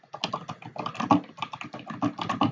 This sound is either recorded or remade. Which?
recorded